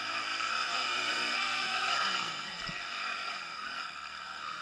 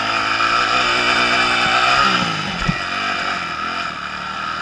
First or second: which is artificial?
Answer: first